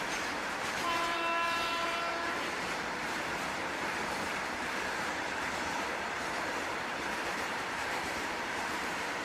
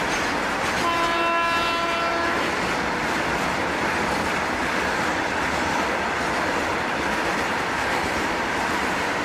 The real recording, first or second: second